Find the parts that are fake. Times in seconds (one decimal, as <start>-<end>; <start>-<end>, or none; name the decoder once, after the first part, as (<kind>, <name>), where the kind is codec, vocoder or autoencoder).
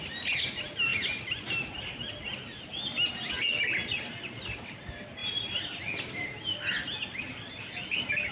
none